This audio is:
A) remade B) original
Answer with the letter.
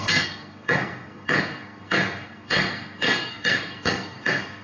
A